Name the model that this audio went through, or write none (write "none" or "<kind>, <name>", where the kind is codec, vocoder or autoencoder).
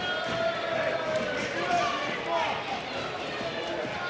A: none